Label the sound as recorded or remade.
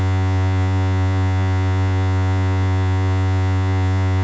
remade